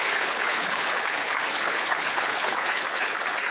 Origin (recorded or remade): remade